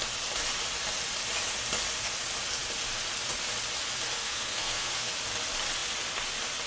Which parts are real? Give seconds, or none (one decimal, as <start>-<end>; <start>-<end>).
0.0-4.2; 5.1-6.7